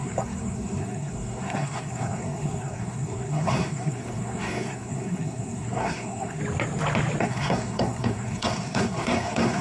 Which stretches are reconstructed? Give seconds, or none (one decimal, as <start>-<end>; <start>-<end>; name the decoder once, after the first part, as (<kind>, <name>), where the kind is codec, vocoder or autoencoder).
0.0-6.4 (codec, SNAC); 7.2-9.6